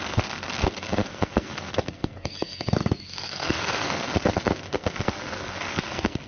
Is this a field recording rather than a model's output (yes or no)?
no